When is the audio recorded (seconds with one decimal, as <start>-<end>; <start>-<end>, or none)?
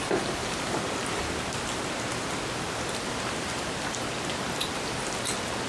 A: 0.0-0.4; 1.2-5.7